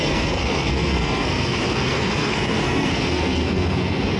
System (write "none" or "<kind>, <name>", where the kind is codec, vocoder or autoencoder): codec, SNAC